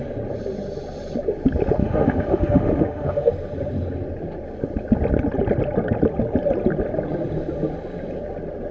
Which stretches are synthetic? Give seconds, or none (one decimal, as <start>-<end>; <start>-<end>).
1.8-3.3